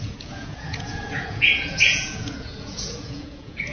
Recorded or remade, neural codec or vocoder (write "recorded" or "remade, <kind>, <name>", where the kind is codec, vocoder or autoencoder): remade, vocoder, Vocos